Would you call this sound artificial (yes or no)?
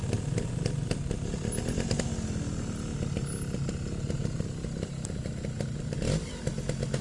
no